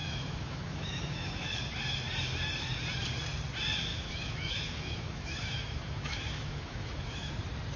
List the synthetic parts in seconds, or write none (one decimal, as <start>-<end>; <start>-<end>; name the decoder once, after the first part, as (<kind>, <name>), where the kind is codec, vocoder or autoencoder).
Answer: 0.0-1.6 (autoencoder, DAC-VAE); 3.9-7.3